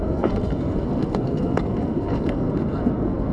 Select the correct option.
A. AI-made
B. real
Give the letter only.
A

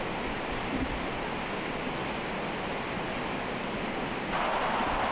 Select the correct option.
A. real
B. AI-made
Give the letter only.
A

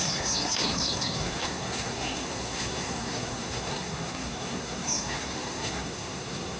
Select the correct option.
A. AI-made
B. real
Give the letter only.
A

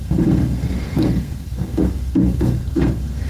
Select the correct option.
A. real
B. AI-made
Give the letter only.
B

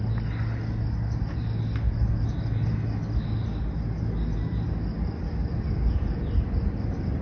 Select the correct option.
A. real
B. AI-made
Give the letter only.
A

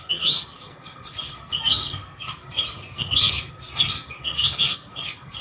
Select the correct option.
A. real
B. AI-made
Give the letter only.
B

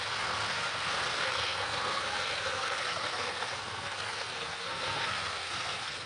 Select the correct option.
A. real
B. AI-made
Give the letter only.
B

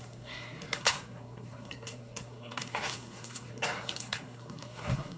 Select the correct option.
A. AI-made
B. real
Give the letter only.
A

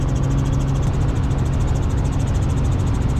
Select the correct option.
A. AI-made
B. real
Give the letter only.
B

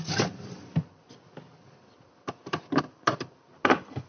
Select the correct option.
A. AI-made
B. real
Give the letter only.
B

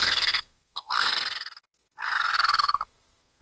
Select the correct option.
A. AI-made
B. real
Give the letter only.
A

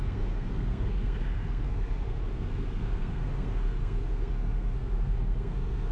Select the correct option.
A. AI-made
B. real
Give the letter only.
A